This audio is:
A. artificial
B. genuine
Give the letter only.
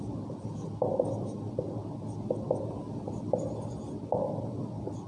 B